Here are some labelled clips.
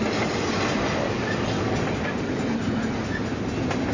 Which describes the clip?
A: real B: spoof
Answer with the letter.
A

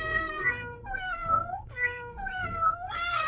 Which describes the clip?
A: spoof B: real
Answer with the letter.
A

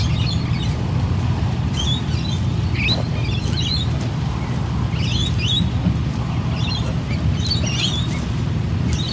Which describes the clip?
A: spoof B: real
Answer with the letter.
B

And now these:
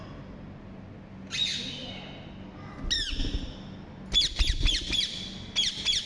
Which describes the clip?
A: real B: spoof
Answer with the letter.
A